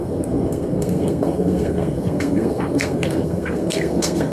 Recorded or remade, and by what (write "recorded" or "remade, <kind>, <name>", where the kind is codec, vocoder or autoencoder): remade, codec, SNAC